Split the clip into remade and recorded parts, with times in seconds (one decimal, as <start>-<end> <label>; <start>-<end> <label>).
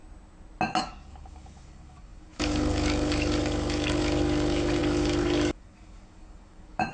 0.0-0.8 recorded; 0.8-6.9 remade